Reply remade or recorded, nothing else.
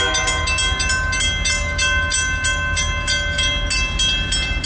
recorded